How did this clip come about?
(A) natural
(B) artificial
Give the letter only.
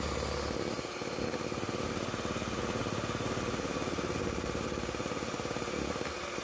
A